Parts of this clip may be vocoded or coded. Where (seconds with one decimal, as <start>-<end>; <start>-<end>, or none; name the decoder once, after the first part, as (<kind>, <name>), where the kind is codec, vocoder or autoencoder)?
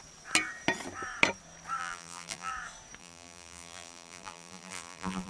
1.8-2.5 (vocoder, BigVGAN v2); 3.0-5.3